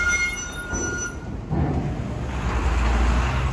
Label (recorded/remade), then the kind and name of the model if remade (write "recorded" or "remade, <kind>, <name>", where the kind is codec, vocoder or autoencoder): recorded